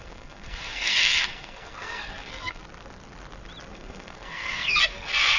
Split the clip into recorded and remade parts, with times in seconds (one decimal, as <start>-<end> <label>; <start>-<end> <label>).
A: 0.0-2.6 remade; 2.6-3.7 recorded; 3.7-5.4 remade